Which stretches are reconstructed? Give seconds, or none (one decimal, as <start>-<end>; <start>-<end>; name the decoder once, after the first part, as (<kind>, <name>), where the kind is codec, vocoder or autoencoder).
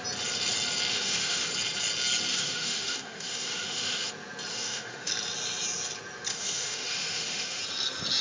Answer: 0.9-1.5 (autoencoder, DAC-VAE); 2.3-4.1; 4.5-5.1; 6.3-7.6